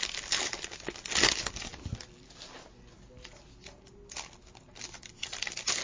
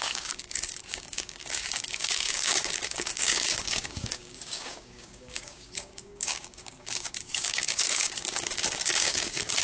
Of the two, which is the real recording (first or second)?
first